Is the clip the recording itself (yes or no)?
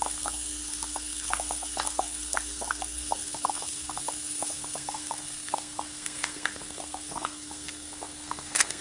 no